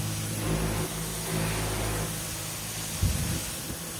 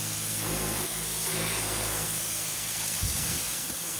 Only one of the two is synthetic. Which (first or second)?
second